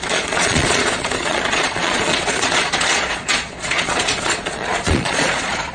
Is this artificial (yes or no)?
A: yes